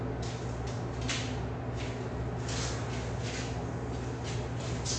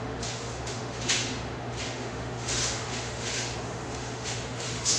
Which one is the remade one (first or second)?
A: second